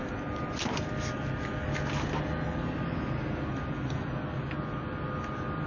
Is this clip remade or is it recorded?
recorded